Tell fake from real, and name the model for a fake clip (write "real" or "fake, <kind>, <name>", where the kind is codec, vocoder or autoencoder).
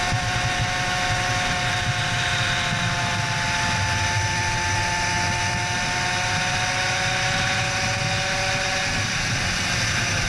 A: real